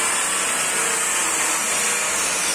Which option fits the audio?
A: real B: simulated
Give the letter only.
A